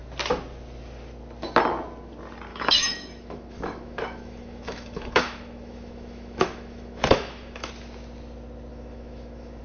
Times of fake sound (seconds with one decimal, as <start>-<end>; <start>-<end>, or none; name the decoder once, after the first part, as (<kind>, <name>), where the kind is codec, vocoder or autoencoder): 2.5-7.7 (autoencoder, DAC-VAE); 8.7-9.6